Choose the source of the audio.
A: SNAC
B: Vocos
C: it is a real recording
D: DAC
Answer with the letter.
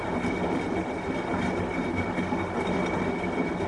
C